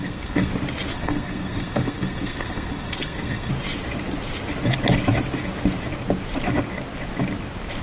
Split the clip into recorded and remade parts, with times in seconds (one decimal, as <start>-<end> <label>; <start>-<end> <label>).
0.0-0.5 remade; 0.5-0.9 recorded; 0.9-3.5 remade; 3.5-7.8 recorded